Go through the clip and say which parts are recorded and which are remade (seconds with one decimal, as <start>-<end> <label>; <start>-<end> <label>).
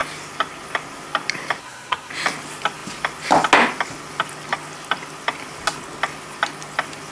0.0-1.6 recorded; 1.6-2.1 remade; 2.1-7.1 recorded